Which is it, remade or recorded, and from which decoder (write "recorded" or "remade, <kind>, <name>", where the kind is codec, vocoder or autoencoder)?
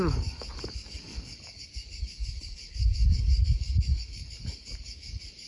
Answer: remade, codec, DAC